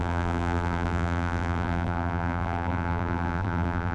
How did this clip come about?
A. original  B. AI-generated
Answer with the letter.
B